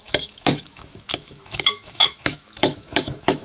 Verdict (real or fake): fake